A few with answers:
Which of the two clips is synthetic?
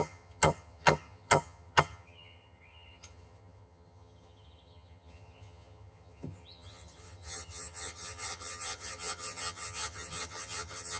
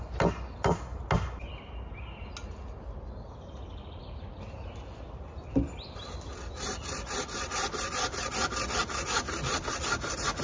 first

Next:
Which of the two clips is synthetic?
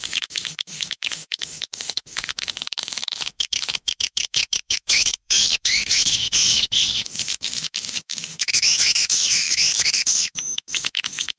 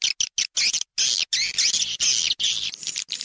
first